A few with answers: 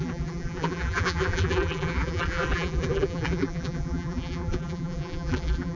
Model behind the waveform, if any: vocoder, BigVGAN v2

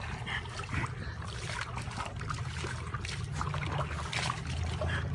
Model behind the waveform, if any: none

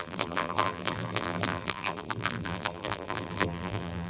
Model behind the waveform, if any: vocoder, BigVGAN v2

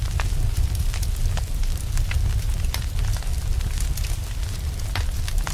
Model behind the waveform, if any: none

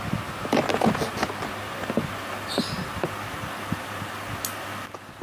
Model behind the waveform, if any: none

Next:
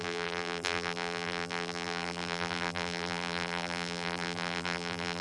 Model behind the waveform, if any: vocoder, BigVGAN v2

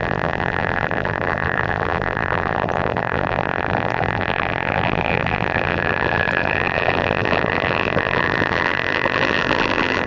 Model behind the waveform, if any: vocoder, BigVGAN v2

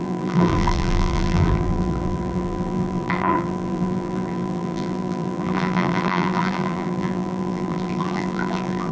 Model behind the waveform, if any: vocoder, BigVGAN v2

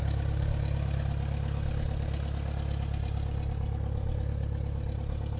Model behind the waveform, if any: none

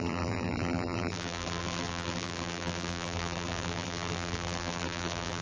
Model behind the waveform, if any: vocoder, BigVGAN v2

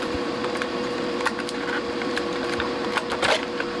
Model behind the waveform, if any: vocoder, BigVGAN v2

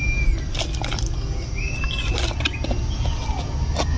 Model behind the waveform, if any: none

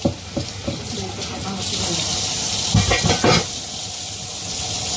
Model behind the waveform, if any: none